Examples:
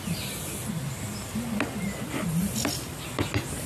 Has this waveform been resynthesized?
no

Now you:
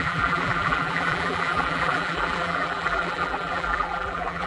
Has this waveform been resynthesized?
yes